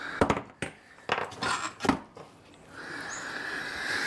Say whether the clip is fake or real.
real